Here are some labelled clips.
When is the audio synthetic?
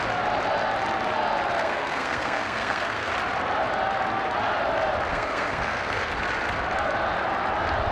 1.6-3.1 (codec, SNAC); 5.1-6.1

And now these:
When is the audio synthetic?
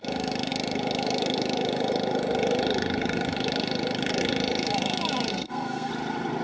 5.3-5.9 (codec, SNAC)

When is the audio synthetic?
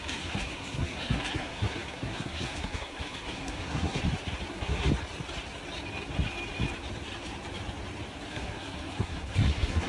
0.0-4.0 (codec, SNAC); 4.5-4.9; 8.3-9.9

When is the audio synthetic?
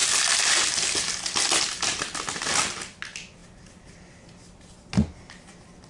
none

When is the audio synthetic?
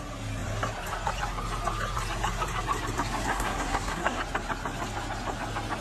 3.3-4.2 (codec, SNAC)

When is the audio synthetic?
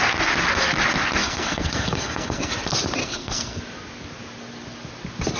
1.2-2.5 (codec, SNAC); 3.0-3.6